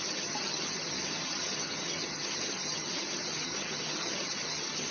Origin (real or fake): fake